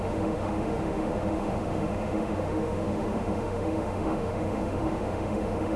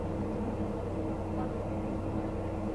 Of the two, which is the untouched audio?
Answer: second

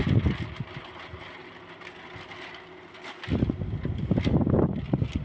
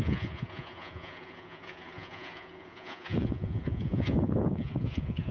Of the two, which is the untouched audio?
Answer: first